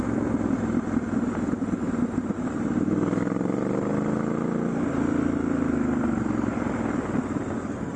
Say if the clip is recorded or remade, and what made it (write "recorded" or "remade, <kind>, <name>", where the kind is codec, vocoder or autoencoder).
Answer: recorded